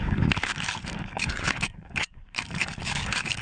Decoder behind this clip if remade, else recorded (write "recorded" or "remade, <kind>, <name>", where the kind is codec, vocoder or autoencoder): remade, codec, DAC